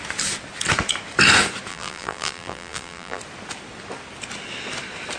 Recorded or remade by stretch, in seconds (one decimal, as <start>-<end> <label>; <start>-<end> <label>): 0.0-1.7 recorded; 1.7-3.2 remade; 3.2-5.2 recorded